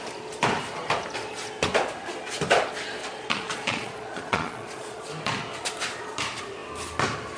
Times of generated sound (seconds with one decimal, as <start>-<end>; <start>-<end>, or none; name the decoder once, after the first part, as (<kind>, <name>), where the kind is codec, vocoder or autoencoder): 3.0-5.1 (vocoder, Vocos)